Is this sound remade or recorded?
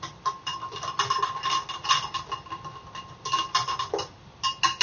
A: recorded